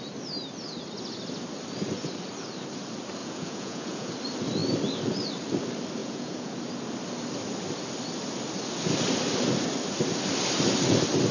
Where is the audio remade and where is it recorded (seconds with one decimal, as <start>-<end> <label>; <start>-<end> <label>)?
0.0-3.2 recorded; 3.2-4.1 remade; 4.1-6.0 recorded; 6.0-6.5 remade; 6.5-11.3 recorded